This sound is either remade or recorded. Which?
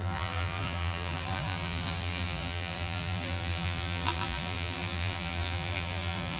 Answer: remade